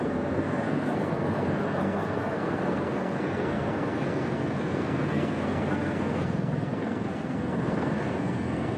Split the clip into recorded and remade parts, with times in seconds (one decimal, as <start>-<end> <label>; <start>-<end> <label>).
0.0-8.8 remade